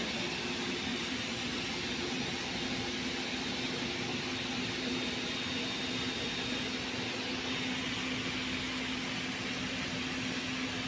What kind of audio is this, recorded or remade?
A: recorded